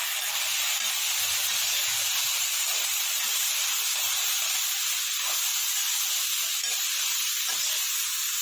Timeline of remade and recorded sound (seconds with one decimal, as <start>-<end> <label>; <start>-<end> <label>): 0.0-0.9 remade; 0.9-2.3 recorded; 2.3-4.3 remade; 4.3-8.4 recorded